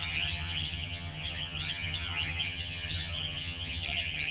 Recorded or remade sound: remade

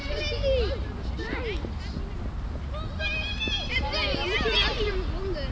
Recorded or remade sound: recorded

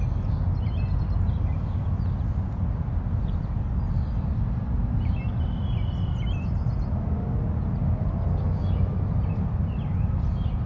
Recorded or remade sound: recorded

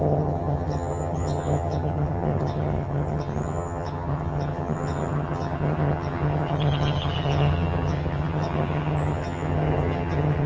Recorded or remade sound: remade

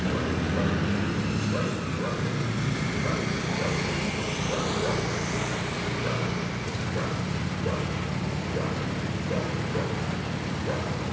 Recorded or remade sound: recorded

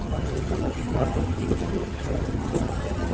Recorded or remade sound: remade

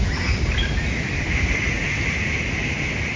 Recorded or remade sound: recorded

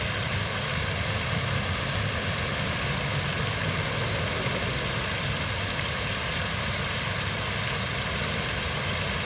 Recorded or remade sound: recorded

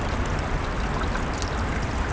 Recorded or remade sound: recorded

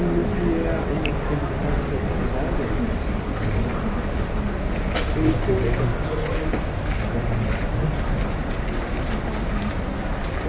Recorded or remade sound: recorded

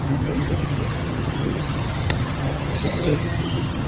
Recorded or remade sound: remade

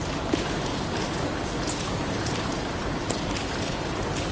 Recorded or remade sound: recorded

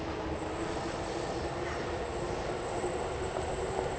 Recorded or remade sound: recorded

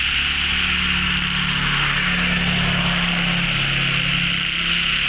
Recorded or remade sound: recorded